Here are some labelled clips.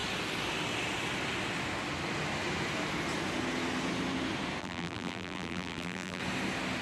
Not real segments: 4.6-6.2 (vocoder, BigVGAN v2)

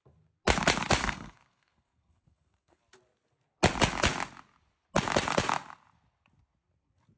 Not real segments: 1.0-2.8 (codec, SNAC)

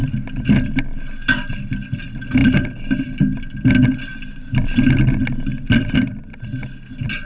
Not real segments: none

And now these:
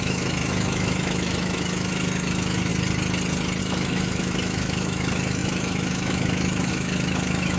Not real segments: 0.0-2.7 (autoencoder, DAC-VAE); 3.6-7.6

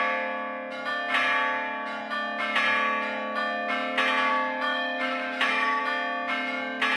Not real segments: 4.3-5.8 (autoencoder, DAC-VAE)

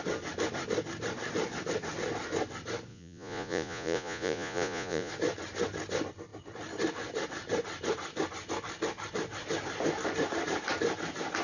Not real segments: 2.9-5.1 (vocoder, Vocos)

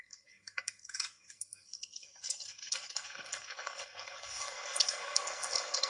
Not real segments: 0.0-5.9 (codec, SNAC)

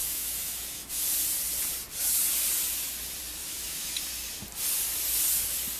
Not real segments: 0.0-1.0 (autoencoder, DAC-VAE); 3.4-4.0